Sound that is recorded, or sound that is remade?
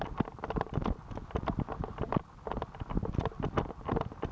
recorded